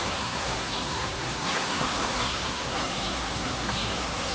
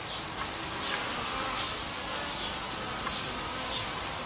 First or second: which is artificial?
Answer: first